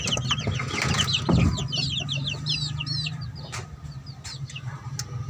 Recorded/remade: recorded